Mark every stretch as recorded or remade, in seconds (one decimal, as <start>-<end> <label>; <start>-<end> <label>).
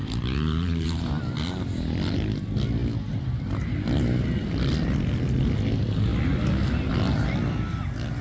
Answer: 0.0-1.1 remade; 1.1-8.2 recorded